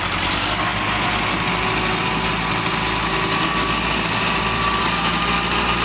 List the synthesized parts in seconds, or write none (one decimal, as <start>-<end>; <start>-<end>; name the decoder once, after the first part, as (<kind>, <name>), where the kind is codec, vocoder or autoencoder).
none